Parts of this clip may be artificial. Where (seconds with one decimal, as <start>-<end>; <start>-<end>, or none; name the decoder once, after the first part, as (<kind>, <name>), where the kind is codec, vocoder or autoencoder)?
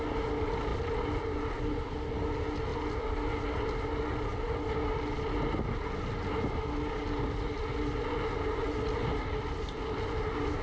none